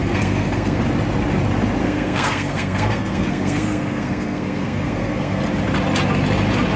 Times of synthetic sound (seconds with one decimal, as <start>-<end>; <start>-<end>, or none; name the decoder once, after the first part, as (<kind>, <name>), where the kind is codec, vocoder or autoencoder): 0.0-0.8 (codec, SNAC); 1.8-5.4